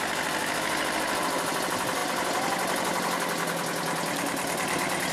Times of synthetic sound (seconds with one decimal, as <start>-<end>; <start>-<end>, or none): 0.0-2.0